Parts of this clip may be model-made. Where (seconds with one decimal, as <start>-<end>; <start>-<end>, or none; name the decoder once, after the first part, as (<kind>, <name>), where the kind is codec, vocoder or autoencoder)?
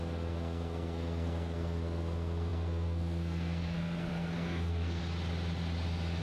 0.0-5.0 (codec, SNAC)